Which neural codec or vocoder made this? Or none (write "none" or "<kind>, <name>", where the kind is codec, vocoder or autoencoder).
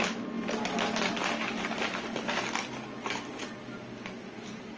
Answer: none